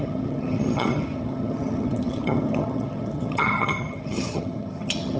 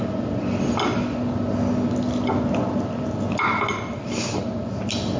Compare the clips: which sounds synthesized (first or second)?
first